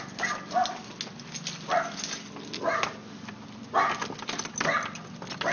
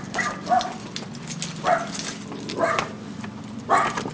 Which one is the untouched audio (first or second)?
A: first